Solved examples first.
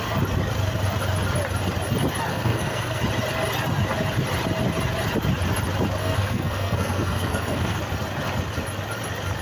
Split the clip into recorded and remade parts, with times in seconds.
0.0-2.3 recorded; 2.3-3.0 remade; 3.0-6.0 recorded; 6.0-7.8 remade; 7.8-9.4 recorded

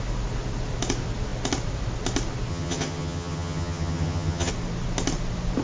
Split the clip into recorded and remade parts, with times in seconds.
0.0-2.5 recorded; 2.5-4.5 remade; 4.5-5.6 recorded

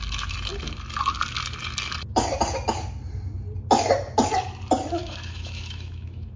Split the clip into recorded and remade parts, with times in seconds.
0.0-5.0 recorded; 5.0-6.4 remade

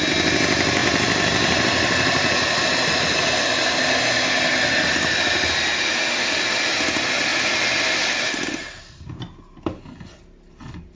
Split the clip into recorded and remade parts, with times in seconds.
0.0-11.0 recorded

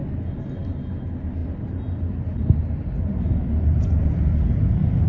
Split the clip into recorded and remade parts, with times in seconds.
0.0-5.1 recorded

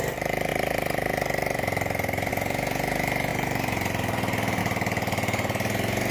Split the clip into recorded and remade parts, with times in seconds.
0.0-0.5 recorded; 0.5-2.3 remade; 2.3-3.3 recorded; 3.3-4.6 remade; 4.6-6.1 recorded

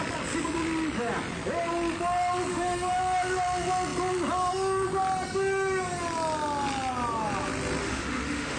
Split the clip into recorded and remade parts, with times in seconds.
0.0-2.5 recorded; 2.5-3.0 remade; 3.0-7.8 recorded; 7.8-8.6 remade

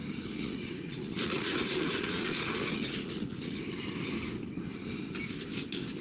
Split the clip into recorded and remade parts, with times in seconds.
0.0-3.6 remade; 3.6-6.0 recorded